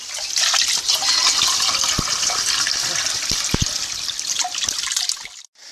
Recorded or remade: recorded